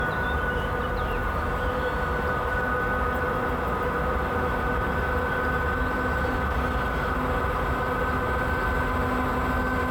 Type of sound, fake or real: real